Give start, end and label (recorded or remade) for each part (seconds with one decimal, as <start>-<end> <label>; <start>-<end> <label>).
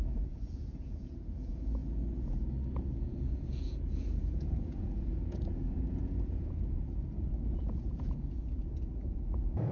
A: 0.0-1.8 remade; 1.8-2.9 recorded; 2.9-9.7 remade